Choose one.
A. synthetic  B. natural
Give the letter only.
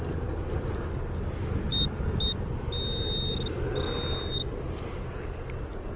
B